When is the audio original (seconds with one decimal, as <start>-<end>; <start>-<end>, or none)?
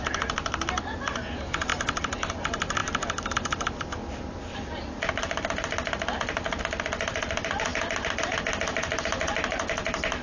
0.0-10.2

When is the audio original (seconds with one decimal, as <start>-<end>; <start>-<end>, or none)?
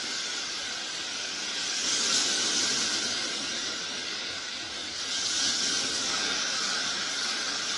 2.4-3.0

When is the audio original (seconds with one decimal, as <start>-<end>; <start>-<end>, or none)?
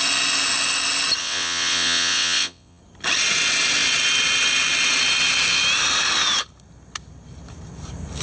0.0-1.2; 2.8-8.2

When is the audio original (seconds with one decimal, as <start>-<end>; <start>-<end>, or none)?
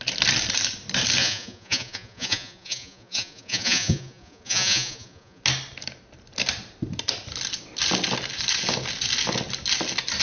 0.0-1.2; 5.4-10.2